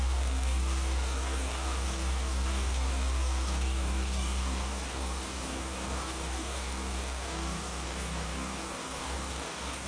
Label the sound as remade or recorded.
remade